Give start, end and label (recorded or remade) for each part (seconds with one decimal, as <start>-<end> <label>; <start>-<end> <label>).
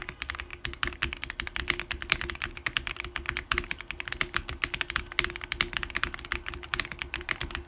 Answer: 0.0-7.7 recorded